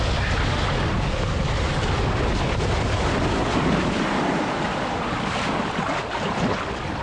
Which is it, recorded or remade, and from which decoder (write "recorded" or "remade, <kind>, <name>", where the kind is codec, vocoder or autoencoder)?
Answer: recorded